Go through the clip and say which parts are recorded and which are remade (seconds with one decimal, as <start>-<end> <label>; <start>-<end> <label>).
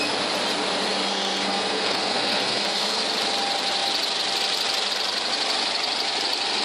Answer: 0.0-1.1 recorded; 1.1-3.0 remade; 3.0-6.6 recorded